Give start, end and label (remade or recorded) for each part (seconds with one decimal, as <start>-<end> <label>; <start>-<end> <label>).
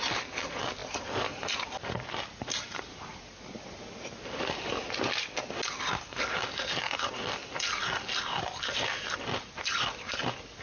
0.0-10.6 recorded